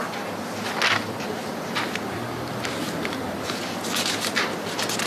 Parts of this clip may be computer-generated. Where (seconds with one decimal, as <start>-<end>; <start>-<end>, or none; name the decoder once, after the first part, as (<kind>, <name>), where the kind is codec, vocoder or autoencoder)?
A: 0.6-5.1 (vocoder, BigVGAN v2)